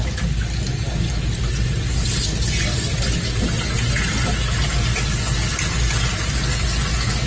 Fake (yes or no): no